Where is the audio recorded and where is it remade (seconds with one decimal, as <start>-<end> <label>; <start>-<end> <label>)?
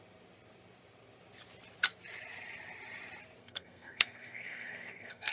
0.0-3.4 recorded; 3.4-5.3 remade